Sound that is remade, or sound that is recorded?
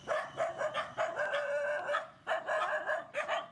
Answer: recorded